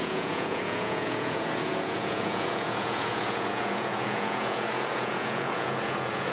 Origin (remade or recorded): remade